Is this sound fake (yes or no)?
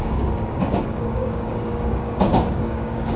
yes